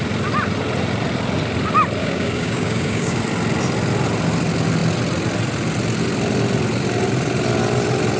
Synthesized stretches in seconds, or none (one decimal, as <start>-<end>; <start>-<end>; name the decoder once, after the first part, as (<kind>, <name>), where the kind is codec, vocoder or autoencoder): 2.0-3.2 (codec, DAC)